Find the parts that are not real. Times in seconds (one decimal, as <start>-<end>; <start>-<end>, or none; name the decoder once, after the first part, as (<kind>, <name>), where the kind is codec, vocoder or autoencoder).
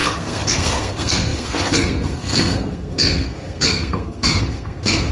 0.0-5.1 (codec, SNAC)